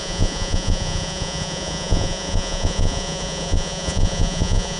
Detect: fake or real fake